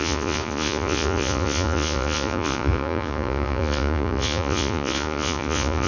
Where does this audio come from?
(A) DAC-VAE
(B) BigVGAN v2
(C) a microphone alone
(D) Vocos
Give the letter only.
D